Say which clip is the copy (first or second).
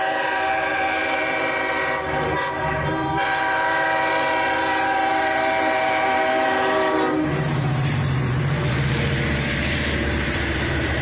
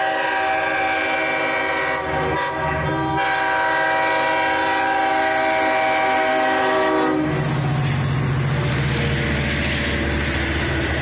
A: first